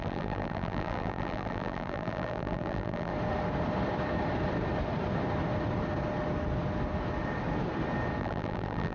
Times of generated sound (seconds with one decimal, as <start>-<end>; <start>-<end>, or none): 0.0-3.1; 8.2-8.9